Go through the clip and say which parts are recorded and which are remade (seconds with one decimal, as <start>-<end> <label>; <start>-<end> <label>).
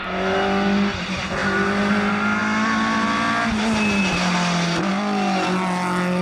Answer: 0.0-6.2 recorded